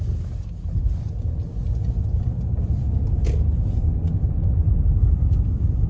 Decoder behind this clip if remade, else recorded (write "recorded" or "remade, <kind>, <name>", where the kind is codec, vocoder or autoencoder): recorded